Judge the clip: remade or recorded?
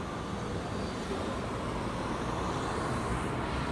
recorded